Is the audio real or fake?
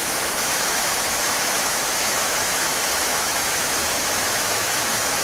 fake